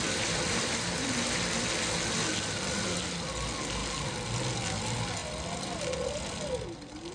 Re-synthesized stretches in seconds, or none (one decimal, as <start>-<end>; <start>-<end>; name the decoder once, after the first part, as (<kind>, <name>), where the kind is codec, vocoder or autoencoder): none